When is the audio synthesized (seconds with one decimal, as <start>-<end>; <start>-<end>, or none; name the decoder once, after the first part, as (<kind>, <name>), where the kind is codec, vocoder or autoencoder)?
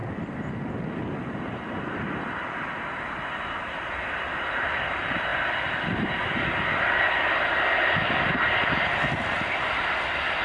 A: none